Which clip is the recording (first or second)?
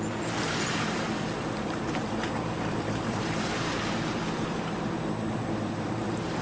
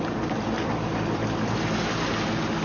second